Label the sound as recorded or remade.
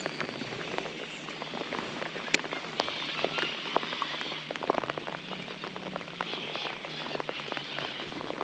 remade